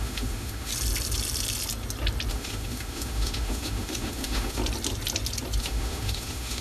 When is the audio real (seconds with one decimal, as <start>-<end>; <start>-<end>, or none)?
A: 0.7-2.3; 4.6-5.6